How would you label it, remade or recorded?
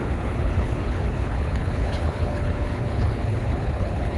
remade